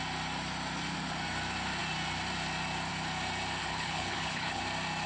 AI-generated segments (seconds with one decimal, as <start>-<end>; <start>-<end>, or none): 3.6-4.6